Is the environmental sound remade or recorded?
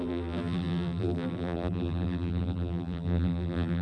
remade